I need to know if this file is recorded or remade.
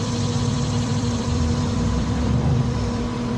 remade